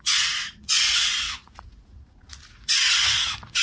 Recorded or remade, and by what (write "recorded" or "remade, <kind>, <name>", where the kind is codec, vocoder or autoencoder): remade, vocoder, Vocos